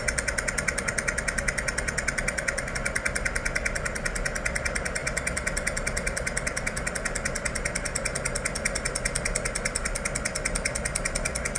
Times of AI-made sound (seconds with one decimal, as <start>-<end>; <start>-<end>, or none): none

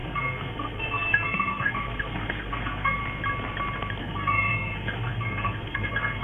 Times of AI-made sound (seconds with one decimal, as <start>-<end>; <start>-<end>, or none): 0.0-3.0; 4.0-6.2

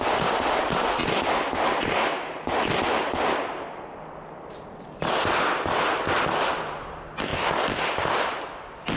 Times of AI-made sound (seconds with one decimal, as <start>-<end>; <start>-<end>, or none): none

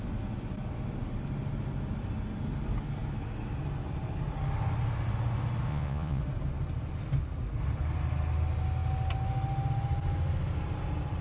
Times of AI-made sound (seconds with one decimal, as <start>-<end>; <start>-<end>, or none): 5.7-6.2

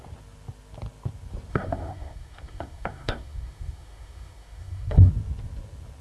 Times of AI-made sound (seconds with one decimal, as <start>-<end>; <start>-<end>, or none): 1.5-5.1

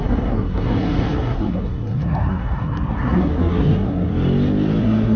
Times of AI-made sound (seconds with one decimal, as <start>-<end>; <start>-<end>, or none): 0.0-4.1; 4.8-5.2

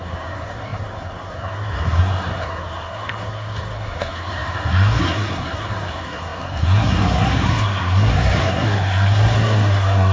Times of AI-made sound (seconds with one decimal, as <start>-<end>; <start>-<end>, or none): 0.0-10.1